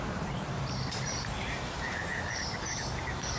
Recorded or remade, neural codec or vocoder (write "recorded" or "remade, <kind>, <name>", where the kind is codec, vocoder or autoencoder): remade, vocoder, BigVGAN v2